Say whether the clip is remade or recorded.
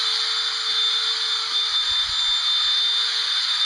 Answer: recorded